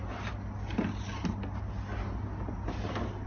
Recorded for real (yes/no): yes